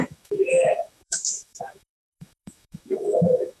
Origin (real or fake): fake